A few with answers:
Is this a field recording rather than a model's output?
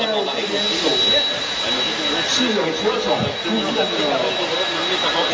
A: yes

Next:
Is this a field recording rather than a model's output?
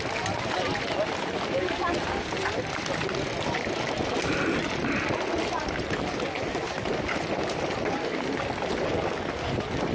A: yes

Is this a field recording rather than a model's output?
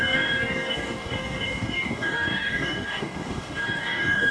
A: no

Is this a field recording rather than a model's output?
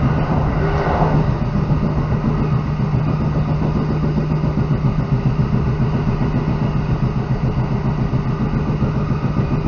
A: yes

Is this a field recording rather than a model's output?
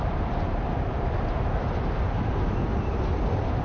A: yes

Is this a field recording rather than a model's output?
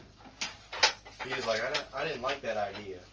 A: yes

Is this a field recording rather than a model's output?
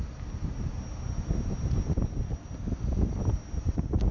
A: yes